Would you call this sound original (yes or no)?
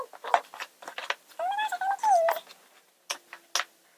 yes